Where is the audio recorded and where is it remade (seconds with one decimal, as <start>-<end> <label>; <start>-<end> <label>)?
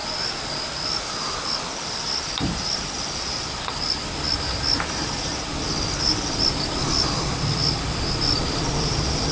0.0-9.3 recorded